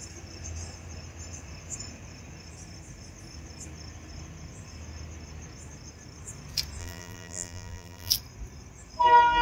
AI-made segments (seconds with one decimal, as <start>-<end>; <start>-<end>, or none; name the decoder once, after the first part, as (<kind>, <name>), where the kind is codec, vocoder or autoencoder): 6.8-8.1 (vocoder, BigVGAN v2)